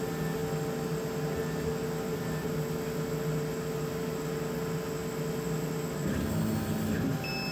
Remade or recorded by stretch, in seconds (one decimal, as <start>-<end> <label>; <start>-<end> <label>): 0.0-7.5 recorded